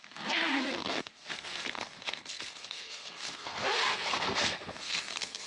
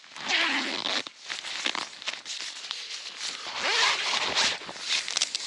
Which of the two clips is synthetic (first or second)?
first